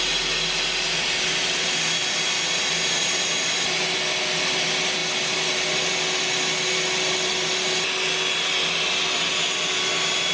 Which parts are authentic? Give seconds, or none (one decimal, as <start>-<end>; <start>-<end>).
0.0-10.3